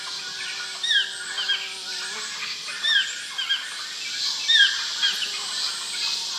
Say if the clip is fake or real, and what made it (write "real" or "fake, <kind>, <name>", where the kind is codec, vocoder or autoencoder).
real